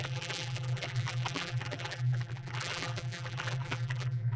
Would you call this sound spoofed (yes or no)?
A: yes